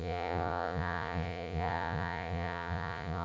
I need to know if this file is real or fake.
fake